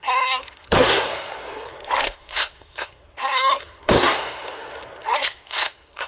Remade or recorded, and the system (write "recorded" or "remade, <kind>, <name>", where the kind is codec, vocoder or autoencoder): remade, codec, SNAC